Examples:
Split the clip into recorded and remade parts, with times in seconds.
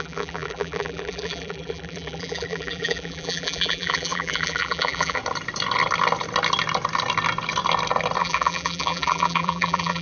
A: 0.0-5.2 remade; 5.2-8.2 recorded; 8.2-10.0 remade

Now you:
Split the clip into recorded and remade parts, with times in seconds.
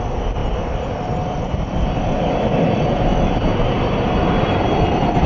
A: 0.0-5.3 recorded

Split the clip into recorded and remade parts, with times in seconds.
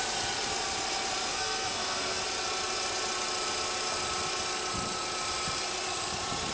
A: 0.0-1.3 recorded; 1.3-2.2 remade; 2.2-6.5 recorded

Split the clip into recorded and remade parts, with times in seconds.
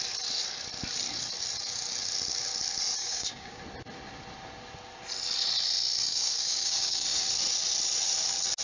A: 0.0-3.0 recorded; 3.0-3.6 remade; 3.6-6.1 recorded; 6.1-7.3 remade; 7.3-8.6 recorded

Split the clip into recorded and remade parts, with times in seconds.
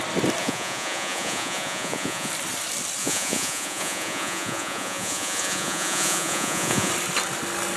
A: 0.0-0.4 recorded; 0.4-2.3 remade; 2.3-3.0 recorded; 3.0-6.9 remade; 6.9-7.8 recorded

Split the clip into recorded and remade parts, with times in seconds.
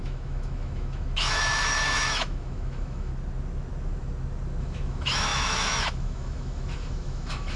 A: 0.0-3.1 remade; 3.1-4.6 recorded; 4.6-7.6 remade